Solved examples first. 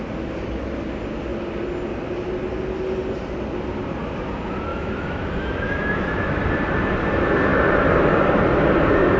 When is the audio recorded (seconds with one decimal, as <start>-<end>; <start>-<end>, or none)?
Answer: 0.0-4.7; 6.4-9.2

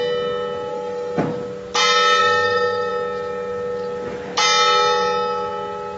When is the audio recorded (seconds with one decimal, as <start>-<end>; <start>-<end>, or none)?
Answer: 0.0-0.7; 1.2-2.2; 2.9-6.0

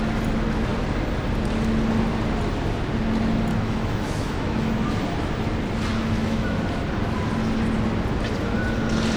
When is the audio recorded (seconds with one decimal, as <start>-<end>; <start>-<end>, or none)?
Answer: 0.0-3.5; 4.9-5.9; 6.6-9.2

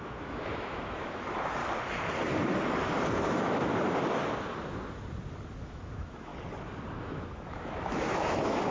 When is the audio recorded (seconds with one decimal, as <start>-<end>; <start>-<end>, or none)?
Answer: 1.6-3.1; 3.7-5.6; 6.3-6.9

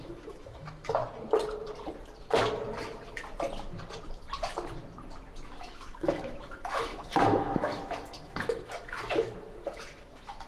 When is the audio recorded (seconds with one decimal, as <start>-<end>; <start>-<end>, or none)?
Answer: 1.0-5.4